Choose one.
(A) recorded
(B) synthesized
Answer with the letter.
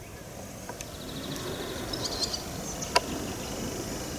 A